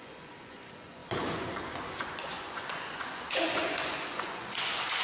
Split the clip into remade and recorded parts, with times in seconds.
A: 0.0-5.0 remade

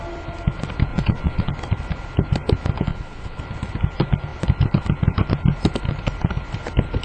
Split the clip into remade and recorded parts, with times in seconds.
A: 0.0-0.9 recorded; 0.9-1.5 remade; 1.5-2.9 recorded; 2.9-3.4 remade; 3.4-7.0 recorded

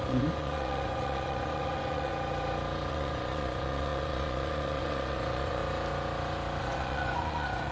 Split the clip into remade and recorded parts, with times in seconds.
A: 0.0-2.1 remade; 2.1-2.9 recorded; 2.9-5.6 remade; 5.6-6.6 recorded; 6.6-7.7 remade